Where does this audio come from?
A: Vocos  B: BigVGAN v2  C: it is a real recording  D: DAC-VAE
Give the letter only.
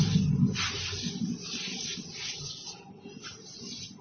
B